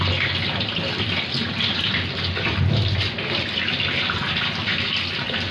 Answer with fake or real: real